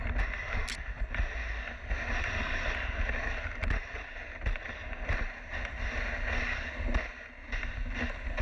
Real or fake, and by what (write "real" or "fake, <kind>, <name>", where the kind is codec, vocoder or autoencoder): real